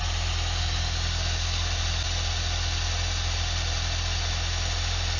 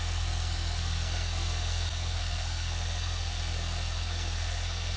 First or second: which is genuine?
first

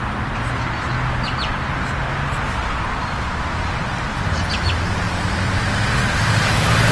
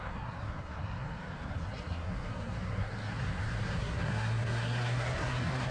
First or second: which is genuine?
first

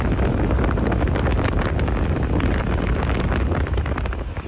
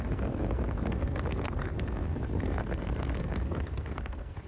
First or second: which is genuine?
first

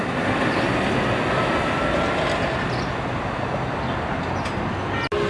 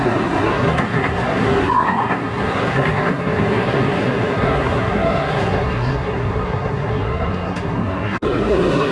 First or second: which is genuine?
first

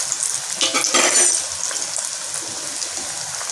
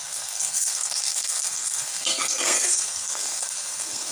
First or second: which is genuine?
first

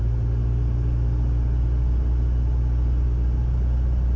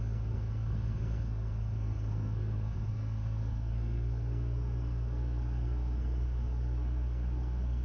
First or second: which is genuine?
first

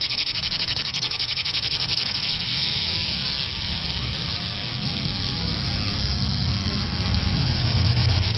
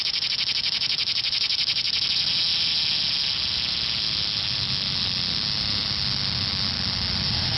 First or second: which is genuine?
second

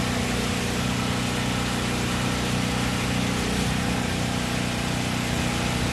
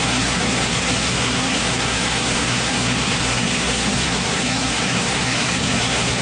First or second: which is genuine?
first